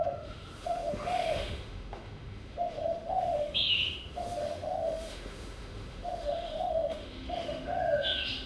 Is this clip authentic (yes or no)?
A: no